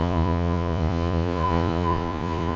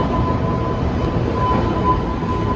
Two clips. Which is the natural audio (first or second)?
second